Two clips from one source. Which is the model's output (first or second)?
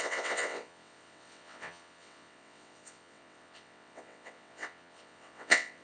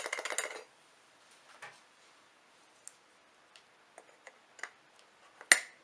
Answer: first